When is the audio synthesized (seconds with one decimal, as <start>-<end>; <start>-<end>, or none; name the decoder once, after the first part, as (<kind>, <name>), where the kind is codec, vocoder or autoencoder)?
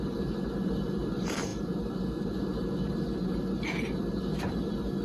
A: 0.0-5.0 (vocoder, BigVGAN v2)